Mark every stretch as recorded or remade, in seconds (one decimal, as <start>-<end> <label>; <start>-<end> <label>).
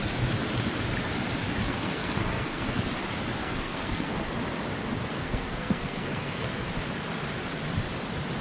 0.0-1.6 recorded; 1.6-2.8 remade; 2.8-3.4 recorded; 3.4-4.3 remade; 4.3-5.1 recorded; 5.1-6.7 remade; 6.7-8.4 recorded